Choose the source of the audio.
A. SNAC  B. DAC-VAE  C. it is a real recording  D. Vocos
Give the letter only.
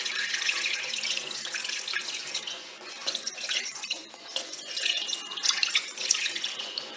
D